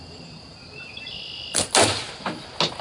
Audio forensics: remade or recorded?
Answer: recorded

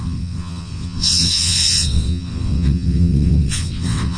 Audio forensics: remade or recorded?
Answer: remade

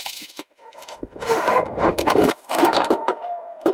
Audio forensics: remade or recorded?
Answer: remade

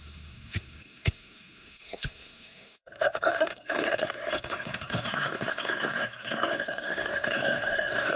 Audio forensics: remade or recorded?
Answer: remade